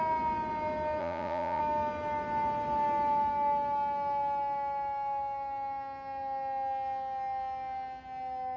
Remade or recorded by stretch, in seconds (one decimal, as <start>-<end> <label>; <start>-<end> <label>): 0.0-1.0 recorded; 1.0-1.6 remade; 1.6-8.6 recorded